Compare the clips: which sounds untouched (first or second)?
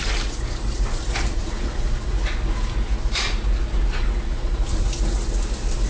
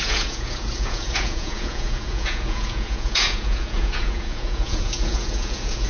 first